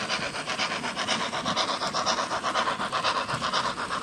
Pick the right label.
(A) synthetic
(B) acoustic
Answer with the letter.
B